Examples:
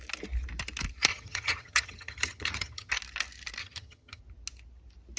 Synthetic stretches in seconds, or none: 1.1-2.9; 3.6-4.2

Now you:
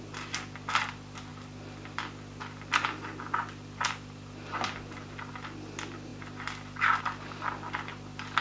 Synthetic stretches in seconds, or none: none

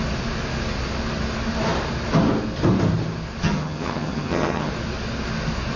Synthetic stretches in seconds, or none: 3.4-4.7